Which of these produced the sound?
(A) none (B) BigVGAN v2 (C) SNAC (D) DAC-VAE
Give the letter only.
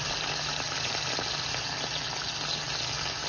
A